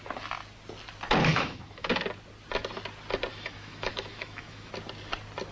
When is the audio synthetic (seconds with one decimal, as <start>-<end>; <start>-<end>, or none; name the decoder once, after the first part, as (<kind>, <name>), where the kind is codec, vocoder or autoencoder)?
1.3-1.9 (autoencoder, DAC-VAE); 3.3-4.7